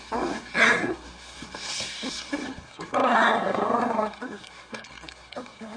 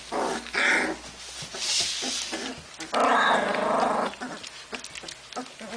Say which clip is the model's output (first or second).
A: first